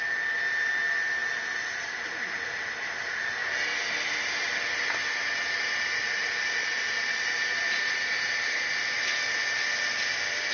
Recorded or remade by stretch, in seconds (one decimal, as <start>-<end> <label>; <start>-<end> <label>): 0.0-10.5 recorded